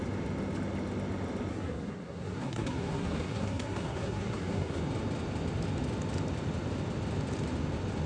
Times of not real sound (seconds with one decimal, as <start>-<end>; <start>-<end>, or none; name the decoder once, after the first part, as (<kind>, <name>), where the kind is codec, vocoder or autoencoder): 1.5-4.8 (codec, SNAC)